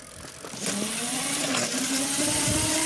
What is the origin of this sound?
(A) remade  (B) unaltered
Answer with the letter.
B